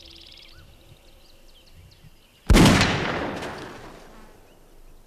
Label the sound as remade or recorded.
recorded